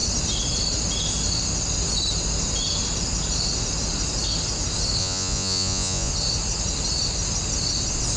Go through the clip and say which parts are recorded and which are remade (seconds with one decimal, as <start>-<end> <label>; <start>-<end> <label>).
0.0-5.0 recorded; 5.0-6.1 remade; 6.1-8.2 recorded